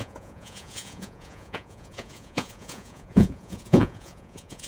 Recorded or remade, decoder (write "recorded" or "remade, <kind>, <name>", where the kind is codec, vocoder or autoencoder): remade, vocoder, Vocos